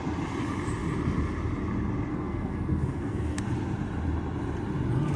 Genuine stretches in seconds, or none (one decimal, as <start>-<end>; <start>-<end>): 0.0-2.1; 3.4-5.2